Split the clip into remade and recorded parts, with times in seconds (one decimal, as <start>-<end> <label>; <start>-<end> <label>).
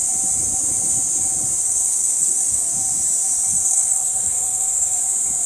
0.0-1.6 recorded; 1.6-2.7 remade; 2.7-3.5 recorded; 3.5-5.0 remade; 5.0-5.5 recorded